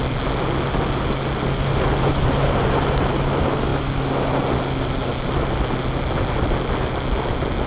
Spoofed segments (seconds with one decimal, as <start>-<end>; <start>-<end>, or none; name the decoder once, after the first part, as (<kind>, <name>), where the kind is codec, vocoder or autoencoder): none